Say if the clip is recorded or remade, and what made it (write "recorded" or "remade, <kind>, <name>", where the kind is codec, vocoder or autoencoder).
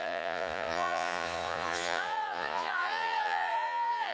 remade, vocoder, Vocos